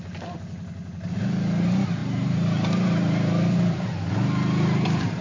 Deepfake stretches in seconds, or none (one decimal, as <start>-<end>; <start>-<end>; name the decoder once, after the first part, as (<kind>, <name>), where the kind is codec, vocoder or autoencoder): 2.0-4.0 (vocoder, BigVGAN v2)